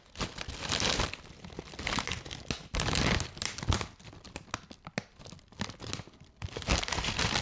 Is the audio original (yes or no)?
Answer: yes